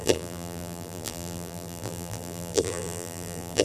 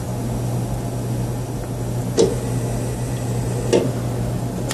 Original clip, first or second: second